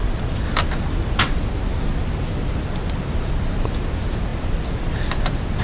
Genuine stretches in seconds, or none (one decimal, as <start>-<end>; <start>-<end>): 0.0-5.6